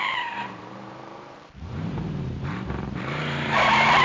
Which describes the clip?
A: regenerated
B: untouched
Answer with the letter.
A